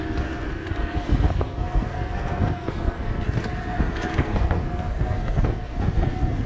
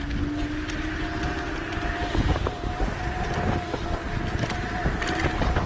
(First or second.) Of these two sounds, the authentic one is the second